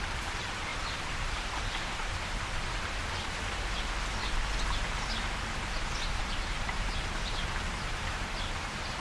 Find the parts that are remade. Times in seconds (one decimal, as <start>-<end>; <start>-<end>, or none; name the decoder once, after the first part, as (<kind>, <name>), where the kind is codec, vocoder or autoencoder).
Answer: 0.0-3.0 (vocoder, BigVGAN v2); 6.2-9.0